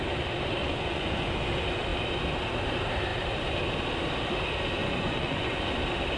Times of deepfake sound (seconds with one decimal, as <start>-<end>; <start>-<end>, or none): 0.6-1.4; 4.8-5.7